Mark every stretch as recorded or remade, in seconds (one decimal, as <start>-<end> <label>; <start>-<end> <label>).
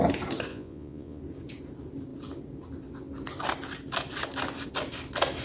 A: 0.0-0.5 recorded; 0.5-1.2 remade; 1.2-5.4 recorded